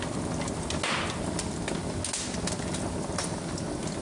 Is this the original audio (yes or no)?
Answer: yes